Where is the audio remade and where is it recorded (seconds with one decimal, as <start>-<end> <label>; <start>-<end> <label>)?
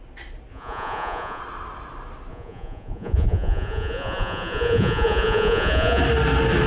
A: 0.0-0.5 recorded; 0.5-1.4 remade; 1.4-2.3 recorded; 2.3-6.0 remade; 6.0-6.7 recorded